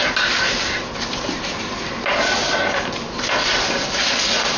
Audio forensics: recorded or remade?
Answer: recorded